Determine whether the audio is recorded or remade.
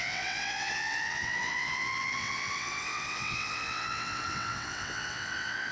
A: remade